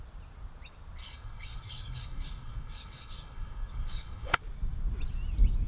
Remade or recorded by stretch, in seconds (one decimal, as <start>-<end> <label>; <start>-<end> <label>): 0.0-1.0 recorded; 1.0-4.4 remade; 4.4-5.7 recorded